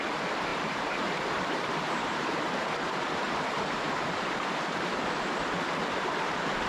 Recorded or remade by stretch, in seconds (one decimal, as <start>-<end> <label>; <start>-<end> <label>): 0.0-0.5 recorded; 0.5-4.5 remade; 4.5-6.7 recorded